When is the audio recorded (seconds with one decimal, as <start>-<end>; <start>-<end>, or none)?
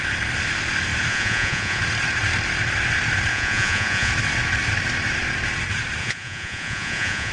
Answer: 0.0-1.1; 1.8-3.3; 4.1-6.0